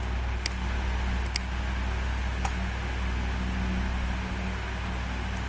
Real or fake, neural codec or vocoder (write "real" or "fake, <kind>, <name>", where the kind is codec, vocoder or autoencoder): real